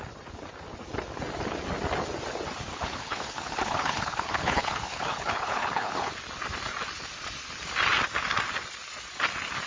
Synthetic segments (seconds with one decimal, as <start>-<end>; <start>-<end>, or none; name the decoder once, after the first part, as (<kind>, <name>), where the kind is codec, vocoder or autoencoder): 2.7-6.1 (codec, HILCodec)

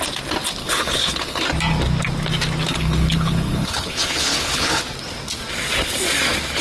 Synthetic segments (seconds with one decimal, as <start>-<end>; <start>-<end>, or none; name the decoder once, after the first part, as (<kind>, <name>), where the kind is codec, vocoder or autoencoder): 0.6-1.4 (codec, HILCodec); 2.7-4.8

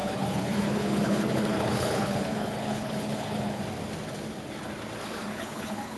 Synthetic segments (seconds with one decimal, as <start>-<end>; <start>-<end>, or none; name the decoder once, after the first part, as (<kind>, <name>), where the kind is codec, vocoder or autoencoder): 0.0-3.6 (codec, HILCodec); 5.3-6.0